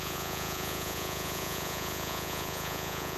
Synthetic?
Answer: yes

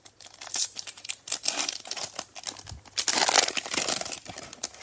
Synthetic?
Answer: no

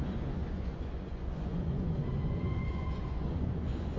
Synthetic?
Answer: yes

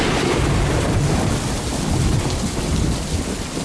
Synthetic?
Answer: no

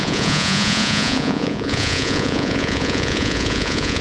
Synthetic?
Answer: yes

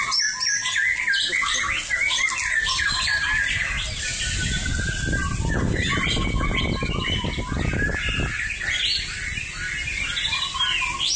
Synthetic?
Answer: no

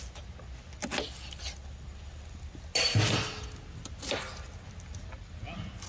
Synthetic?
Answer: no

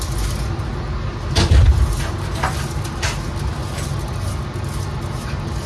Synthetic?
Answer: no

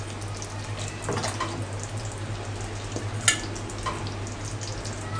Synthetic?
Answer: no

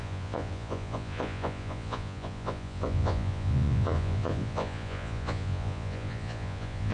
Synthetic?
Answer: yes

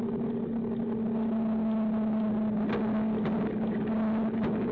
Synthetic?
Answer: no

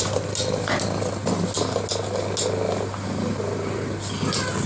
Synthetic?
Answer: no